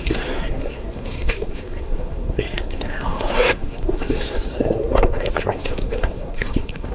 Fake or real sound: fake